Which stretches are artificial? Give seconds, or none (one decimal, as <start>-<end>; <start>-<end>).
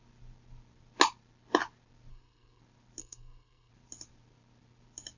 2.1-2.6; 3.0-3.7